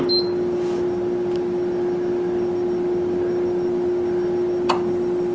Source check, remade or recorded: recorded